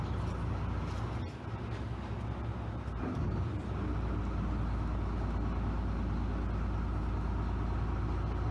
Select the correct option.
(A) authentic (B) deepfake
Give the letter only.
A